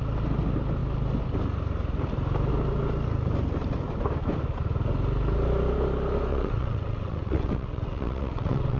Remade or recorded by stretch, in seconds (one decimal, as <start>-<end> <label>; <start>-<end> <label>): 0.0-6.3 recorded; 6.3-8.8 remade